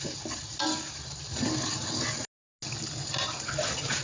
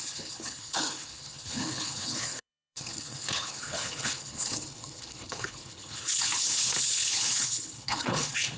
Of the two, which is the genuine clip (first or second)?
first